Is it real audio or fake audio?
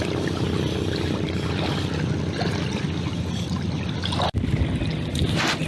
real